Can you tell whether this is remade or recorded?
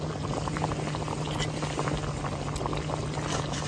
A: recorded